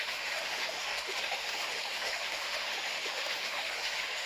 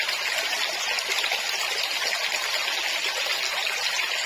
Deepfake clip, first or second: first